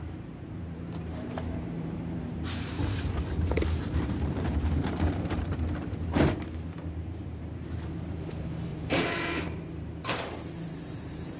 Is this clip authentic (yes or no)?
no